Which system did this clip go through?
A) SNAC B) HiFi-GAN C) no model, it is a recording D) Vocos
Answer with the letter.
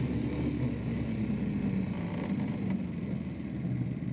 C